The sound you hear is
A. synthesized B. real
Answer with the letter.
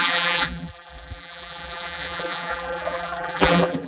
A